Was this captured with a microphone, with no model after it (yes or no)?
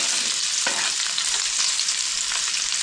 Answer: yes